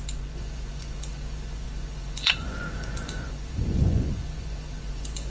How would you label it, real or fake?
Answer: fake